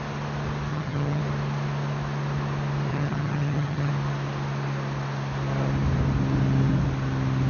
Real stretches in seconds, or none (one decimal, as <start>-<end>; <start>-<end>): 0.0-0.7; 1.2-2.9; 3.9-7.5

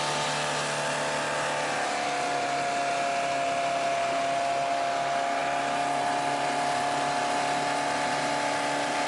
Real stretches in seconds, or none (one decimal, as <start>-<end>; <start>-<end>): 0.0-9.1